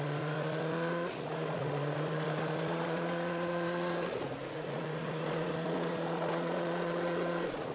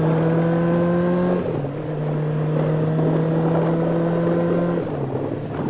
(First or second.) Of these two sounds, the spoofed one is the first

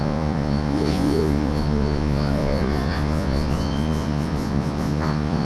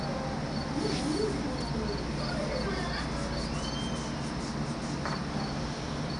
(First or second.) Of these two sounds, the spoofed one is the first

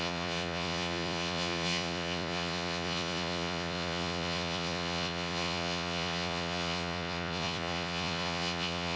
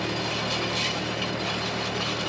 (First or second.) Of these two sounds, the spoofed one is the first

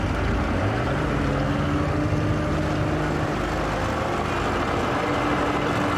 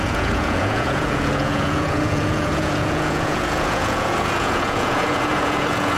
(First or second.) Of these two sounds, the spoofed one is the second